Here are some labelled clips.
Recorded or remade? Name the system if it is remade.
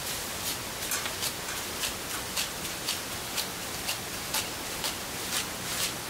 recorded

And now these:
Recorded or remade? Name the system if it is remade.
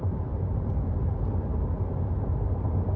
recorded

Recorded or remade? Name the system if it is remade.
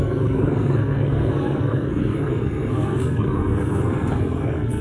remade, codec, SNAC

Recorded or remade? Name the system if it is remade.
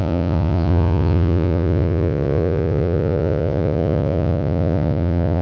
remade, vocoder, Vocos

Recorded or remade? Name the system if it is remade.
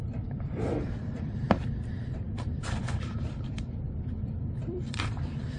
remade, vocoder, BigVGAN v2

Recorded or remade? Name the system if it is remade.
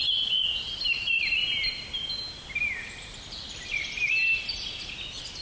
recorded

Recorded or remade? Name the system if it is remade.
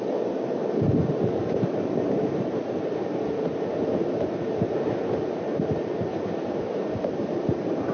remade, vocoder, BigVGAN v2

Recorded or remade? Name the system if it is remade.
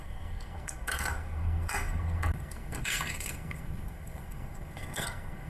remade, codec, SNAC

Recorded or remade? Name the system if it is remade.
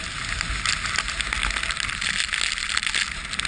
recorded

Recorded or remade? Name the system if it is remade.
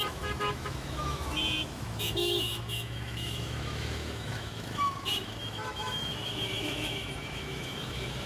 remade, autoencoder, DAC-VAE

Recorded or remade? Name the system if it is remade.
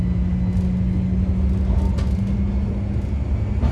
recorded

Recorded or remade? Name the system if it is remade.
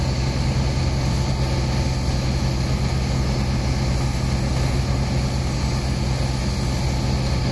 recorded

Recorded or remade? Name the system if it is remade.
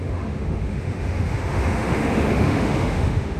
remade, autoencoder, DAC-VAE